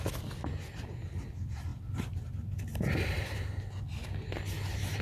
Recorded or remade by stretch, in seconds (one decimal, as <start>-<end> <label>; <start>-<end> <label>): 0.0-5.0 recorded